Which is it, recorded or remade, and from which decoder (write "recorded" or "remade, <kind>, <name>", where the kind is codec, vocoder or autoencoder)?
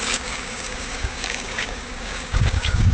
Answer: remade, codec, DAC